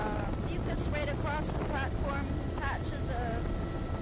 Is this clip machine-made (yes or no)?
no